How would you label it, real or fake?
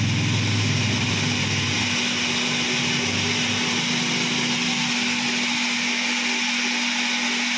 real